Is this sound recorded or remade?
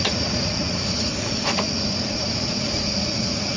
remade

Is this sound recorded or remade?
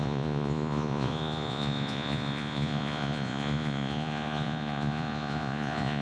remade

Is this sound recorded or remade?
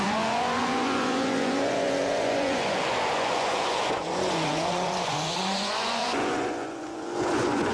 remade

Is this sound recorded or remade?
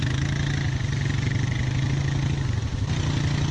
recorded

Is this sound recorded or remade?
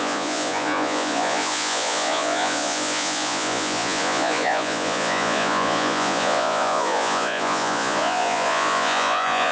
remade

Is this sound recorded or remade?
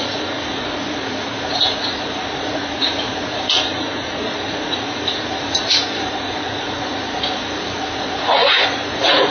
remade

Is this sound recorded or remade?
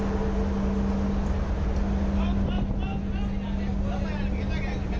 recorded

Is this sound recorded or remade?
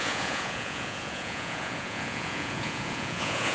remade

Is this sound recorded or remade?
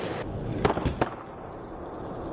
recorded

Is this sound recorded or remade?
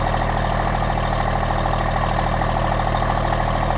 recorded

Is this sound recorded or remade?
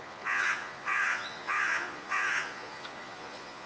remade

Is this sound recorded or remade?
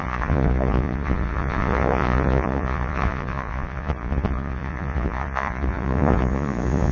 remade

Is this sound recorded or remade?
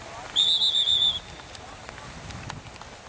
recorded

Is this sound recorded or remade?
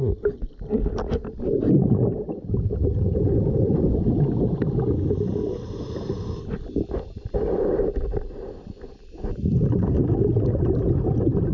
recorded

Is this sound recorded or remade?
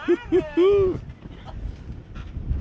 recorded